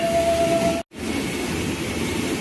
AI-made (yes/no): no